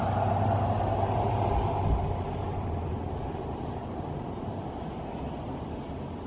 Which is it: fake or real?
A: real